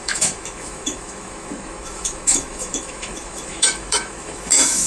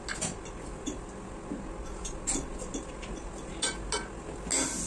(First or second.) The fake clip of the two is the first